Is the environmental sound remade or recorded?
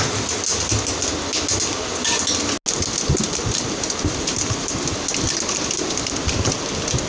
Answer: recorded